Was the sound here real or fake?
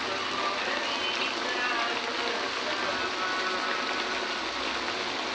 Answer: real